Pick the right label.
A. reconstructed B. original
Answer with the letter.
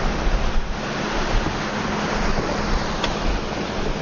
B